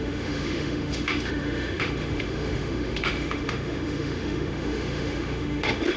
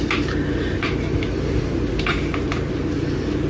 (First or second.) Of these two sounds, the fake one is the first